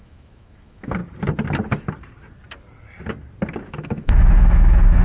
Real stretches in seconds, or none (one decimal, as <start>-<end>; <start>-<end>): 1.0-3.6